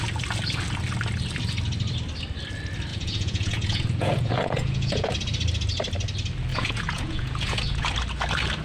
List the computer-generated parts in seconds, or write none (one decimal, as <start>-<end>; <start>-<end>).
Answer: 2.9-5.1; 6.5-7.9

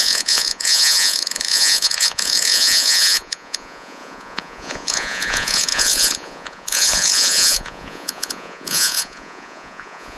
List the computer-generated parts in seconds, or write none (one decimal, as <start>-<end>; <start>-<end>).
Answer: 0.0-10.2

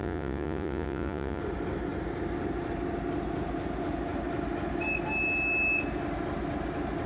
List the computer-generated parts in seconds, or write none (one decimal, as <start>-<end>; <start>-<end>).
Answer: 0.0-1.4